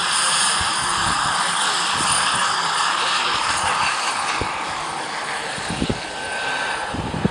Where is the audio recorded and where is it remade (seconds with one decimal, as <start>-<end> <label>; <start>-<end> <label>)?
0.0-0.7 recorded; 0.7-5.1 remade; 5.1-5.5 recorded; 5.5-6.5 remade; 6.5-7.3 recorded